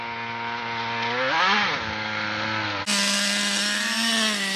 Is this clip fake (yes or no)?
no